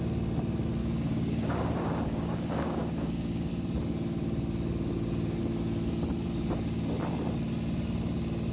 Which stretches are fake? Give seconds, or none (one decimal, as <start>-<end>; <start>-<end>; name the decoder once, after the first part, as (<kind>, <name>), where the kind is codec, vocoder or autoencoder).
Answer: 0.8-3.5 (codec, DAC)